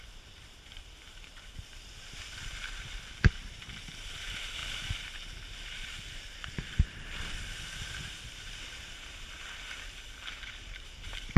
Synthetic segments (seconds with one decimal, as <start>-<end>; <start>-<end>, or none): 0.0-4.6; 5.7-11.4